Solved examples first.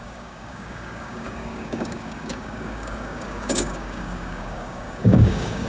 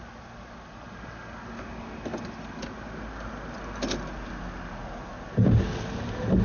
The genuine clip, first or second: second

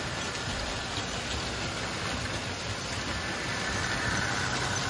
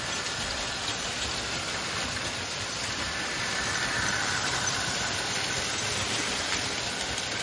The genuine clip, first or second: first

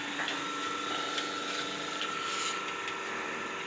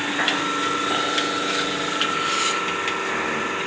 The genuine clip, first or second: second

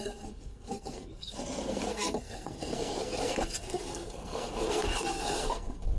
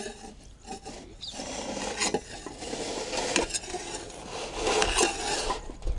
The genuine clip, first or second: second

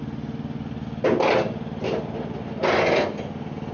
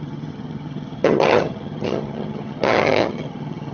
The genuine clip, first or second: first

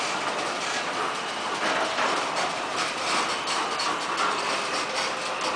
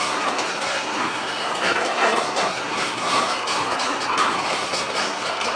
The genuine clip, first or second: first